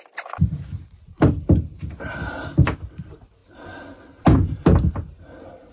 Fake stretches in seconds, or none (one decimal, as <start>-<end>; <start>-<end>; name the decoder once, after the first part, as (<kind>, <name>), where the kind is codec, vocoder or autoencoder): none